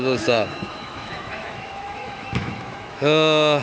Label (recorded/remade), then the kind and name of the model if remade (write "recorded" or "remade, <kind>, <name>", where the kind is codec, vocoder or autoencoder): remade, autoencoder, DAC-VAE